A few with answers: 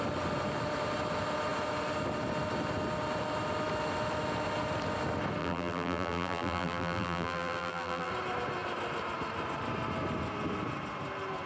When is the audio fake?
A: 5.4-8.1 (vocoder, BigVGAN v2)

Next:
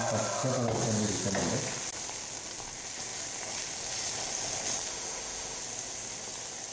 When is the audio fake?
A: 4.9-5.6 (autoencoder, DAC-VAE)

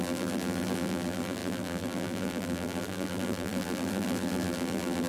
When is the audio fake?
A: 0.0-5.1 (vocoder, BigVGAN v2)

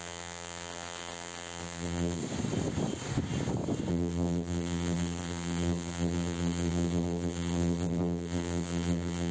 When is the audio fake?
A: 0.0-2.2 (vocoder, BigVGAN v2); 3.9-9.3

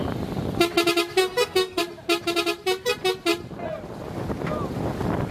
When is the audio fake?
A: 1.2-1.8 (codec, SNAC)

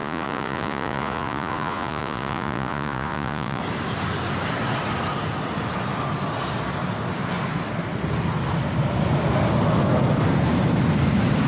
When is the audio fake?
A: 0.0-3.6 (vocoder, Vocos)